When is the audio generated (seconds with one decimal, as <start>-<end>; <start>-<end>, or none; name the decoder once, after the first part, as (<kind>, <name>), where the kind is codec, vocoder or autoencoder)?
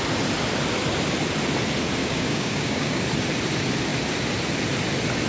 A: 2.0-3.0 (codec, DAC)